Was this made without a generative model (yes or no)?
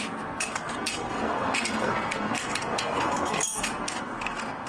no